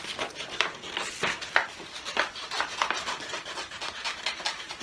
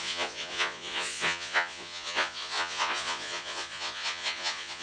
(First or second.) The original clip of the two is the first